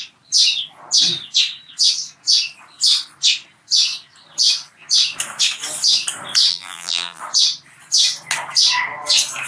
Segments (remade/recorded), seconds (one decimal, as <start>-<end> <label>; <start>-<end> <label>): 0.0-6.5 recorded; 6.5-7.2 remade; 7.2-9.5 recorded